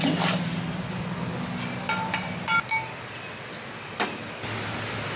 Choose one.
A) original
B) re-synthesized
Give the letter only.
A